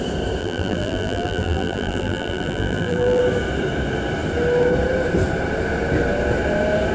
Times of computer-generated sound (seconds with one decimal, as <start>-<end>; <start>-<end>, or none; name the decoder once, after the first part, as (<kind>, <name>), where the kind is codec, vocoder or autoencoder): 0.4-3.2 (vocoder, BigVGAN v2)